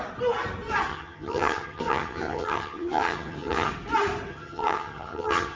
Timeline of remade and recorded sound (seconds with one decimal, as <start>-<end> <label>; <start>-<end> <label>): 0.0-0.9 recorded; 0.9-3.7 remade; 3.7-4.3 recorded; 4.3-5.6 remade